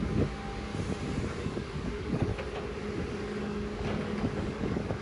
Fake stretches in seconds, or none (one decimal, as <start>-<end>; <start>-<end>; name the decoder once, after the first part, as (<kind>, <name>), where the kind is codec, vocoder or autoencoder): 0.0-0.7 (codec, DAC); 1.3-2.3; 3.1-5.0